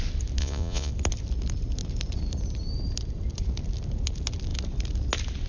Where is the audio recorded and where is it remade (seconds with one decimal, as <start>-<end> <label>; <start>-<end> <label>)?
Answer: 0.0-0.4 recorded; 0.4-0.9 remade; 0.9-5.5 recorded